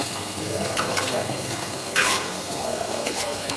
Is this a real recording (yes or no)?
no